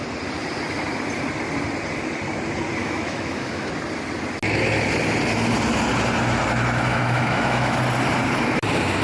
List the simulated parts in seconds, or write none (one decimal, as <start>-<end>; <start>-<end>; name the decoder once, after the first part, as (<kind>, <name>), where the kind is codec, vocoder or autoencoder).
2.8-3.7 (autoencoder, DAC-VAE); 6.9-7.8